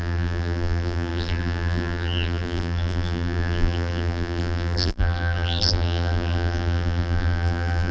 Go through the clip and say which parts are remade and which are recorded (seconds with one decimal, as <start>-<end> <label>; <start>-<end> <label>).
0.0-7.9 remade

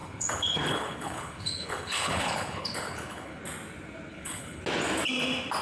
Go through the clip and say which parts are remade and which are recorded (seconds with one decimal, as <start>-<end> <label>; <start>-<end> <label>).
0.0-3.4 remade; 3.4-4.1 recorded; 4.1-4.6 remade; 4.6-5.6 recorded

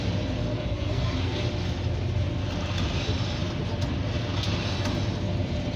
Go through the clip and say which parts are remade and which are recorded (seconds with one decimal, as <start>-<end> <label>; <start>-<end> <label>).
0.0-0.4 recorded; 0.4-1.4 remade; 1.4-5.8 recorded

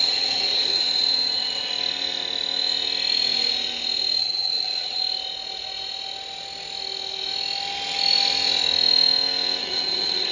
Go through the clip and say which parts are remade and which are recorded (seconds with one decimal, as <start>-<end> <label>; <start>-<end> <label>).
0.0-1.7 remade; 1.7-4.2 recorded; 4.2-5.0 remade; 5.0-9.6 recorded; 9.6-10.3 remade

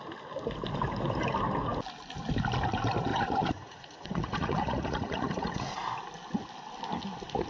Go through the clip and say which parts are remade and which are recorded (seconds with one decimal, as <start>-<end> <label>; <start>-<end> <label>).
0.0-3.1 recorded; 3.1-5.9 remade; 5.9-7.5 recorded

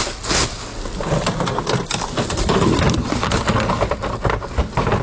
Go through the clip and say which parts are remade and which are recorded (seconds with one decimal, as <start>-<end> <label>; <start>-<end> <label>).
0.0-5.0 recorded